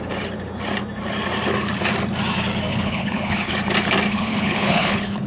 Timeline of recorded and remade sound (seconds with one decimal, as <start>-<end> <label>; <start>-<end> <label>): 0.0-2.7 recorded; 2.7-3.5 remade; 3.5-4.1 recorded; 4.1-5.3 remade